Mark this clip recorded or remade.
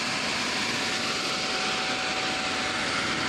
recorded